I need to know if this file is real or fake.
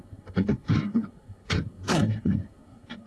fake